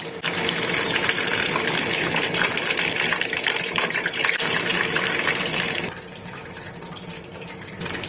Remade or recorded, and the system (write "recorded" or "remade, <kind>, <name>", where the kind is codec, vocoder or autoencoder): remade, vocoder, BigVGAN v2